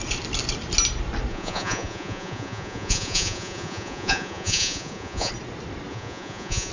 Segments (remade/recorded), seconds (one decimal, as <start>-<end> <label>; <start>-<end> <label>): 0.0-1.3 recorded; 1.3-5.3 remade; 5.3-5.9 recorded; 5.9-6.7 remade